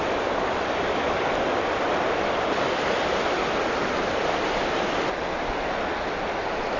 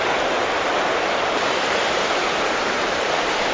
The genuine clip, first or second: first